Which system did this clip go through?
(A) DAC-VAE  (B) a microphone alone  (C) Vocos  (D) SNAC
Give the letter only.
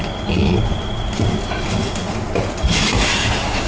B